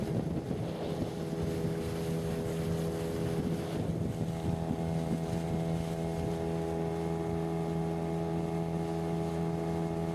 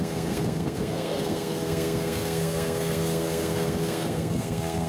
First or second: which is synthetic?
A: second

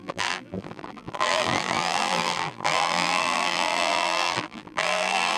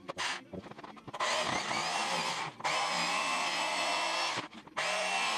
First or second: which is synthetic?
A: first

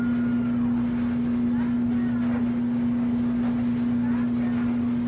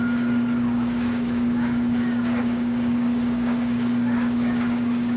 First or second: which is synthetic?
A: second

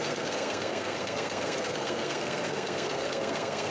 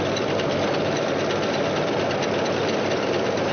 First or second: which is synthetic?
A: first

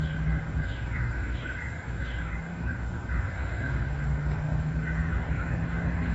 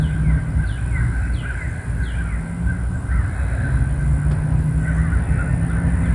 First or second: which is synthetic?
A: first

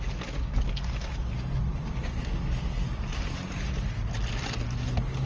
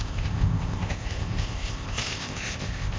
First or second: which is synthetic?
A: second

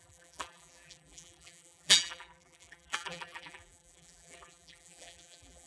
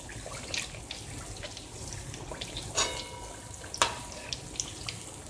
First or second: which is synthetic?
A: first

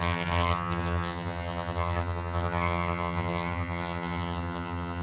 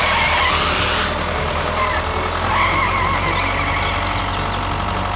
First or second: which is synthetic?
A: first